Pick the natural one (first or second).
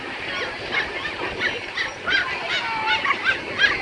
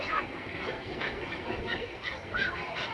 first